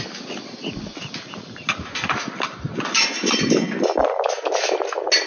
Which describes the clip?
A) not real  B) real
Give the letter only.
B